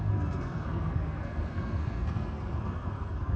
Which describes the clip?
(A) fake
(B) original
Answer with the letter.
A